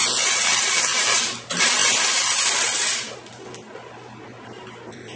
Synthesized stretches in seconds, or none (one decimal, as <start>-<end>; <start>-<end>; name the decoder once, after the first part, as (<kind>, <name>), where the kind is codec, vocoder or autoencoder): none